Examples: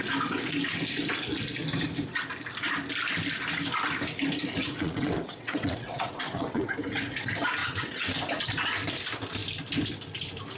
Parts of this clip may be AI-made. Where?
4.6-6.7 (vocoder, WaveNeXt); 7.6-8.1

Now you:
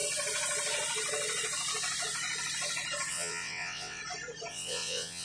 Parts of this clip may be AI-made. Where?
3.1-4.0 (vocoder, WaveNeXt); 4.5-5.2

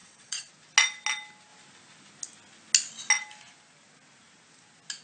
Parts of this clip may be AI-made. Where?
0.0-0.5 (vocoder, WaveNeXt)

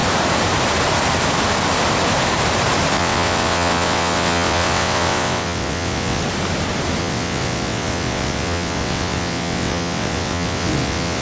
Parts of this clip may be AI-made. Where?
2.9-6.2 (vocoder, WaveNeXt); 7.0-11.2

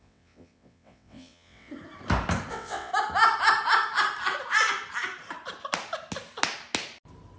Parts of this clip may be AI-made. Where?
0.0-1.7 (vocoder, WaveNeXt); 2.5-2.9

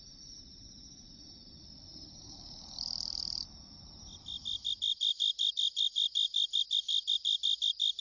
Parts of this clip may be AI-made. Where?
none